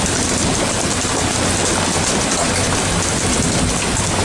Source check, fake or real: real